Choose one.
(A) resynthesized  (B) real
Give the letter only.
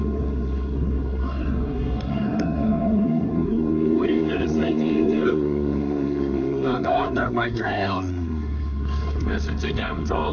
A